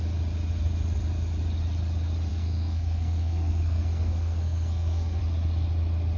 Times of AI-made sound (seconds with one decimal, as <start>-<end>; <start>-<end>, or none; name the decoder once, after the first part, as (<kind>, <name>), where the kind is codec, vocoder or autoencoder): 2.3-5.2 (codec, SNAC)